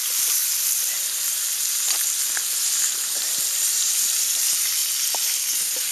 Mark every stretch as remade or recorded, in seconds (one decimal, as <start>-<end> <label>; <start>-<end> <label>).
0.0-0.4 remade; 0.4-3.6 recorded; 3.6-4.8 remade; 4.8-5.5 recorded; 5.5-5.9 remade